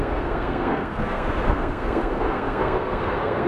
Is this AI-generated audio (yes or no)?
yes